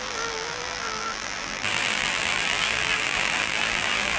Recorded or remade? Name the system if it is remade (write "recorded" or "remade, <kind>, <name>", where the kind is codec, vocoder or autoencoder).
remade, vocoder, BigVGAN v2